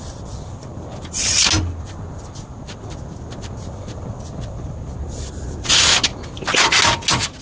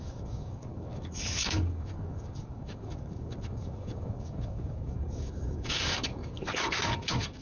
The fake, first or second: second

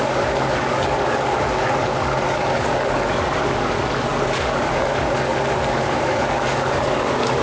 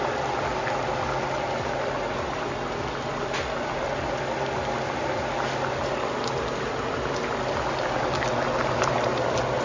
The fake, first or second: first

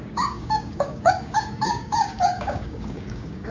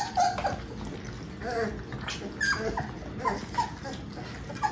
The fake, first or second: first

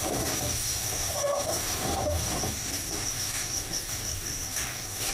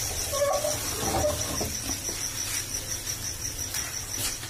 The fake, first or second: first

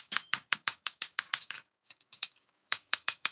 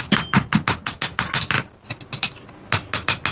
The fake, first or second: first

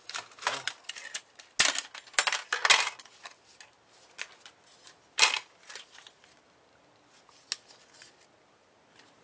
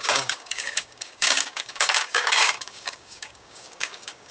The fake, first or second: second